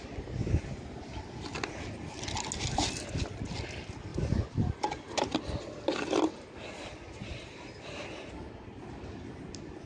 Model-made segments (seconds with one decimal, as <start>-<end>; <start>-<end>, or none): none